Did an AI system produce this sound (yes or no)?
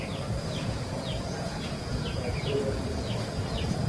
yes